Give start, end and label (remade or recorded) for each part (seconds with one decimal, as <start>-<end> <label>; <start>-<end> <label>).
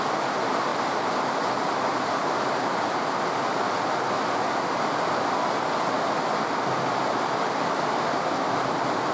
0.0-9.1 recorded